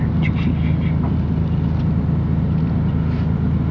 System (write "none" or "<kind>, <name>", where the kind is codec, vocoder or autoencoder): none